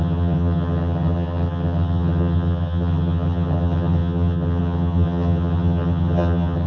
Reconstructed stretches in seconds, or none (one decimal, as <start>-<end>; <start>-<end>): 0.0-6.7